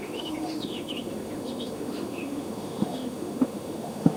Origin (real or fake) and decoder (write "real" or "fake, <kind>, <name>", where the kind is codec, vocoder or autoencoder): fake, autoencoder, DAC-VAE